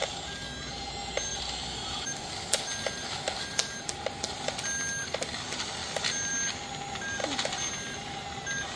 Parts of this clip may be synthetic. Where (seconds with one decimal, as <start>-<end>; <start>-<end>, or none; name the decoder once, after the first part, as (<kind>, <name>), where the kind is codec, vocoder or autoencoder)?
none